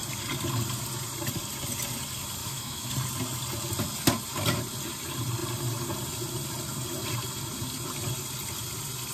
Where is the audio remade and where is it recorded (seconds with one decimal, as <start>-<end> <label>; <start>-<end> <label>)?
0.0-2.4 recorded; 2.4-2.9 remade; 2.9-9.1 recorded